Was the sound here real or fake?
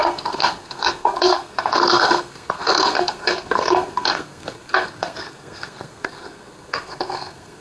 fake